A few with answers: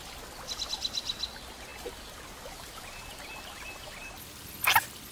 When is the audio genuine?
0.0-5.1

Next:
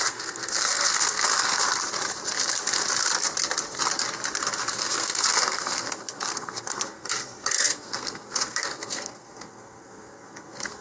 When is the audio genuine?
1.6-4.7

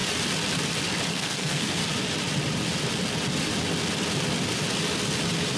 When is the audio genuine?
0.0-1.1; 1.8-5.6

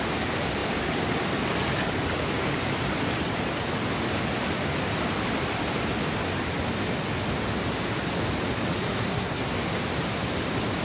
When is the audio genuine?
0.0-8.9; 9.5-10.8

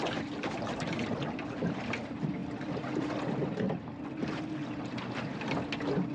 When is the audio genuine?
0.0-6.1

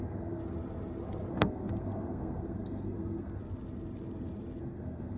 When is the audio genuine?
0.4-1.3; 3.4-4.6

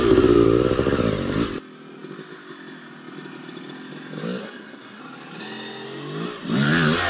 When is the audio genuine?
0.0-4.4; 5.0-7.1